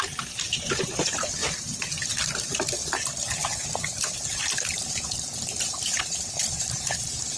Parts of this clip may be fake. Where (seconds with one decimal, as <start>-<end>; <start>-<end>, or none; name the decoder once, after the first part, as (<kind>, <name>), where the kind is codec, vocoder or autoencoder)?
0.0-1.4 (vocoder, BigVGAN v2); 2.1-2.8; 5.6-7.4

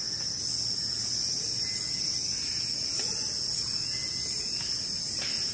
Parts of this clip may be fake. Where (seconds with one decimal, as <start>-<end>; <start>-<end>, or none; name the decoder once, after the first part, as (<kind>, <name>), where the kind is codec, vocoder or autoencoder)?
none

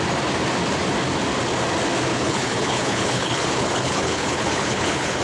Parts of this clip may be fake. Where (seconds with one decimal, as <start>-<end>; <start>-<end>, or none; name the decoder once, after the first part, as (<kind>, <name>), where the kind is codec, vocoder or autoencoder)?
2.1-5.2 (codec, HILCodec)

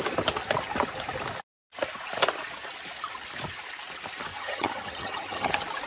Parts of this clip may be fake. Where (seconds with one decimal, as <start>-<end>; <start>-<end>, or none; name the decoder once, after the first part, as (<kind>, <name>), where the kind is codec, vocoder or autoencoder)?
4.3-5.5 (vocoder, HiFi-GAN)